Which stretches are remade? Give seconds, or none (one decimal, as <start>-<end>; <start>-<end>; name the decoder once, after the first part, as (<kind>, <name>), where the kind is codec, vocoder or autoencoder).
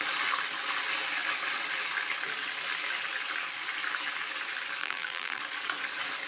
4.8-5.4 (vocoder, BigVGAN v2)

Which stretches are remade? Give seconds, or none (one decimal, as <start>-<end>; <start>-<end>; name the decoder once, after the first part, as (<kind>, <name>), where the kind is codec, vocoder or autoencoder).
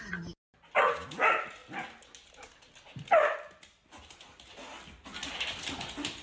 none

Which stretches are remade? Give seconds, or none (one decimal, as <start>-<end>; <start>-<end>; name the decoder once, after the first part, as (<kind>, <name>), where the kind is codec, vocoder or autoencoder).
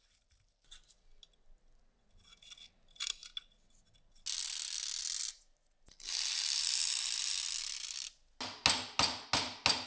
none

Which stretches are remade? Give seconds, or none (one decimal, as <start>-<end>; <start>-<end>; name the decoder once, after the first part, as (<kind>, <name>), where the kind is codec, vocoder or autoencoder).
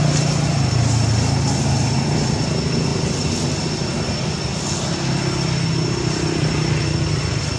none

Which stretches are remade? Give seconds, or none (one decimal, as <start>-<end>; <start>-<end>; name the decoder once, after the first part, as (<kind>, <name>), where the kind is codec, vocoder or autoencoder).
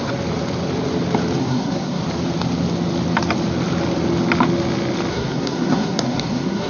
1.4-2.0 (codec, SNAC); 5.1-6.7